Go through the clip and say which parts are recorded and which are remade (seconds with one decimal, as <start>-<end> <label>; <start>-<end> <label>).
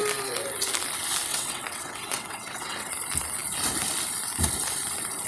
0.0-1.3 recorded; 1.3-2.9 remade; 2.9-5.3 recorded